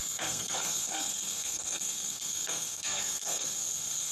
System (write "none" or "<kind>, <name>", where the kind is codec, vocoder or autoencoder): codec, SNAC